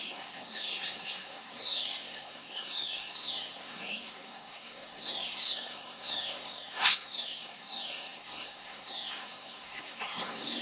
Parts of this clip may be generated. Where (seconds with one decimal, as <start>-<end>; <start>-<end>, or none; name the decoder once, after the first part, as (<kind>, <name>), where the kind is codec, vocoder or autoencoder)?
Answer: 0.0-10.6 (codec, SNAC)